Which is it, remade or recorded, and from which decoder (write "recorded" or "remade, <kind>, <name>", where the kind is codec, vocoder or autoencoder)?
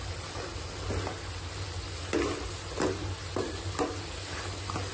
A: recorded